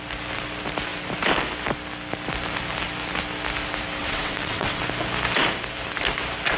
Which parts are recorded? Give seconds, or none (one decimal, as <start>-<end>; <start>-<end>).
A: 0.0-4.0; 4.8-6.6